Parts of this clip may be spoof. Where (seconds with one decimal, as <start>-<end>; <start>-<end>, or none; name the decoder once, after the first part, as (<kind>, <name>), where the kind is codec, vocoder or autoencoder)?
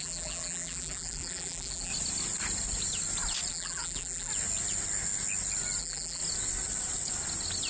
0.0-1.9 (vocoder, BigVGAN v2); 3.5-4.3; 5.8-6.2